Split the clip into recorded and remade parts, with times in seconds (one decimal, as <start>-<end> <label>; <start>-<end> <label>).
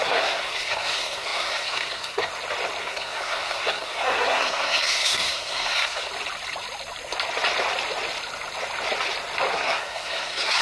0.0-2.3 remade; 2.3-2.8 recorded; 2.8-6.1 remade; 6.1-9.5 recorded; 9.5-10.6 remade